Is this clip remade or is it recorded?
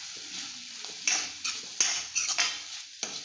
recorded